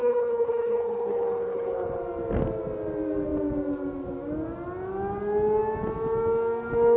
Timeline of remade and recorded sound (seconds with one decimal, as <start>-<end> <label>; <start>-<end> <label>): 0.0-2.0 remade; 2.0-7.0 recorded